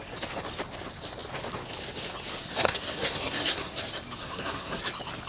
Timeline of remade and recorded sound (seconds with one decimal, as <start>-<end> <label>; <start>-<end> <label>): 0.0-2.4 recorded; 2.4-3.8 remade; 3.8-4.2 recorded; 4.2-4.8 remade; 4.8-5.3 recorded